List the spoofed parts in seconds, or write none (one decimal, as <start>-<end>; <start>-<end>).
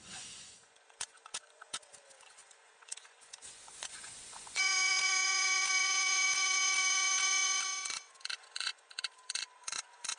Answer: 0.0-10.2